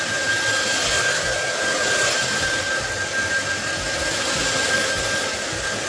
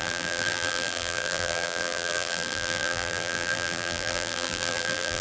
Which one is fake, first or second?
second